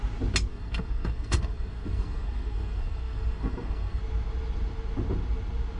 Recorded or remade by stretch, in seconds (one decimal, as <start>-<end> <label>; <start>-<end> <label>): 0.0-0.5 recorded; 0.5-4.0 remade; 4.0-5.8 recorded